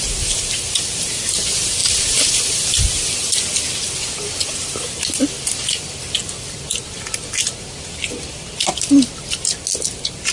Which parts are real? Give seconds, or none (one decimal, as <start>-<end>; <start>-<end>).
0.0-10.3